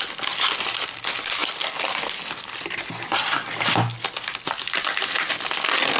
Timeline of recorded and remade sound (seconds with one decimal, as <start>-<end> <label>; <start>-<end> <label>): 0.0-6.0 recorded